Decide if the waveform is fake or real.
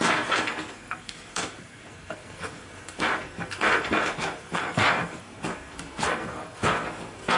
fake